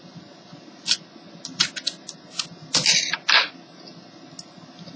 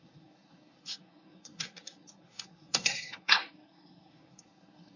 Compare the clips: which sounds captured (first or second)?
first